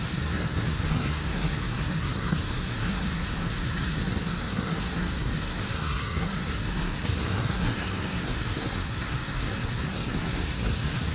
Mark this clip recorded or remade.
remade